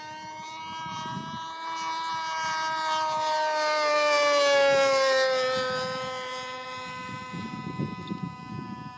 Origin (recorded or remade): recorded